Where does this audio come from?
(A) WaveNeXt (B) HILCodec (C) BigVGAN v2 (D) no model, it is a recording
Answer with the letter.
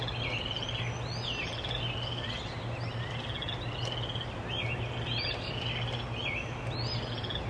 D